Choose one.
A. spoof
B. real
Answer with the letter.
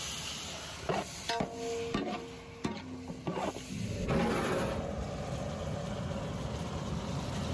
B